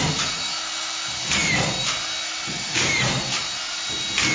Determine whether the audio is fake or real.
real